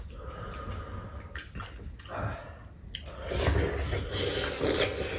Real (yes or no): yes